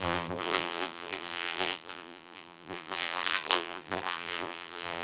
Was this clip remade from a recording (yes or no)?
yes